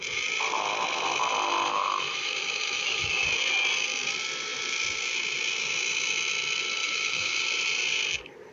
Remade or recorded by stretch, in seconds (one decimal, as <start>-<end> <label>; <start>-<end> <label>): 0.0-1.7 recorded; 1.7-3.2 remade; 3.2-6.8 recorded; 6.8-7.4 remade; 7.4-8.5 recorded